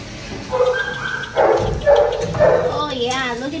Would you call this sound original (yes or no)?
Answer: yes